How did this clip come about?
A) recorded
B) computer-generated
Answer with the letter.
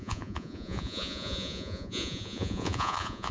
B